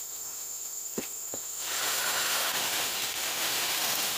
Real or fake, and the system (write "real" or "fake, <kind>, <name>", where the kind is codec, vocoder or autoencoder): fake, autoencoder, DAC-VAE